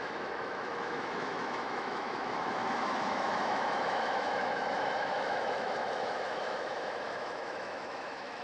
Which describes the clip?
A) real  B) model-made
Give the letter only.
B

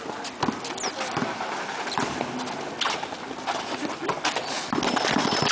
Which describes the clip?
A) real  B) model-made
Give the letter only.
A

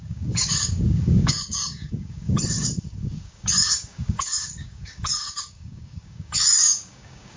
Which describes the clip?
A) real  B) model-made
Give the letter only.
B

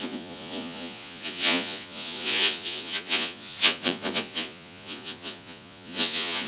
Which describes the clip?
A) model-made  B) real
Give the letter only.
A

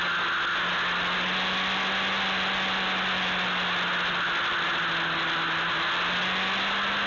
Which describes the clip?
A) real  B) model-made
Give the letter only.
A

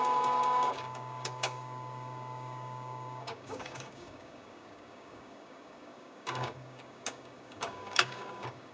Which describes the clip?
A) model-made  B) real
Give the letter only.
A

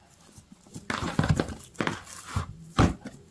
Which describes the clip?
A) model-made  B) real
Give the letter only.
B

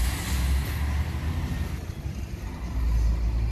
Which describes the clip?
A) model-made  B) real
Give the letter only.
B